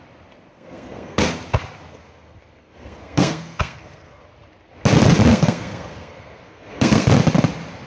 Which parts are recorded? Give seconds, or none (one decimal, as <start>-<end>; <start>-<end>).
0.0-0.5; 1.2-1.9; 4.2-5.3; 7.1-7.9

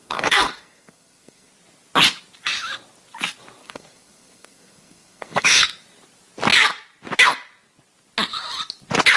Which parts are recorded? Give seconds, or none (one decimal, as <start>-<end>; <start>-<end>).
1.5-3.6; 5.6-9.2

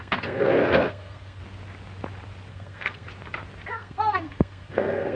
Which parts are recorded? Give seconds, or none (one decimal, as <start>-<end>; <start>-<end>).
1.4-2.5; 3.1-3.7

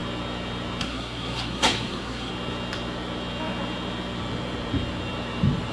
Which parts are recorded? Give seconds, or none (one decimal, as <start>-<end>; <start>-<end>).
0.0-0.8; 2.3-5.7

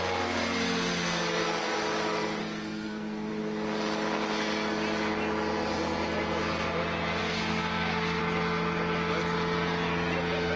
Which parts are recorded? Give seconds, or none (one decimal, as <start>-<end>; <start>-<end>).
0.0-2.4; 3.3-7.2; 8.2-10.6